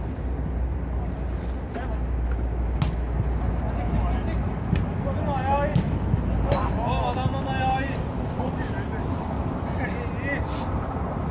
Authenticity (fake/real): real